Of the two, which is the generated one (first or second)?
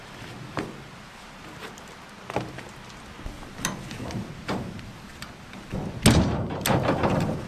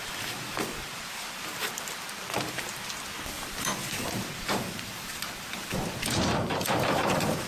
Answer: second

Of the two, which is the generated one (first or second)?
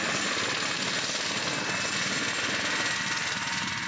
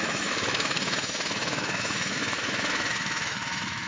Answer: second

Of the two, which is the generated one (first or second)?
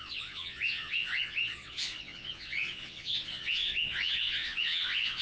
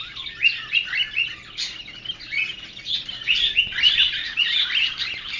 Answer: first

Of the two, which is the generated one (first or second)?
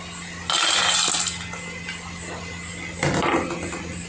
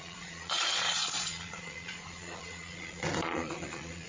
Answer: second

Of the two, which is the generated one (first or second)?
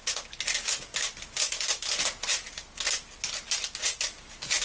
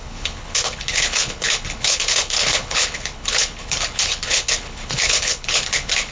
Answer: second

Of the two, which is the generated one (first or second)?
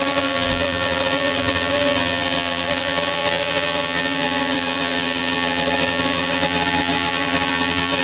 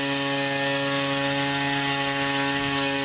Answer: first